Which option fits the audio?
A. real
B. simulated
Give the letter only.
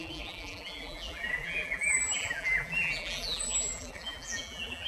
B